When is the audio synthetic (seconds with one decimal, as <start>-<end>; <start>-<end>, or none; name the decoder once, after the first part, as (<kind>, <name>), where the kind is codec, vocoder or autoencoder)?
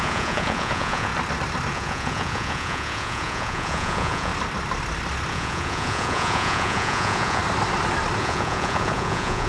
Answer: 0.0-1.1 (vocoder, Vocos); 1.7-4.3; 5.3-7.4; 8.2-9.5